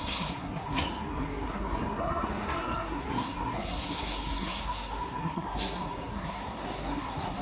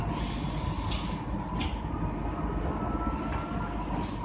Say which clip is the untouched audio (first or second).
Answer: second